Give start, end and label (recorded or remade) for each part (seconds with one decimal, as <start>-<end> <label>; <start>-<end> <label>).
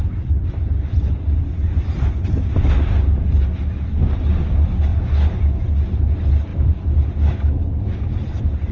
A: 0.0-1.8 remade; 1.8-4.9 recorded; 4.9-5.4 remade; 5.4-6.5 recorded; 6.5-7.2 remade; 7.2-8.7 recorded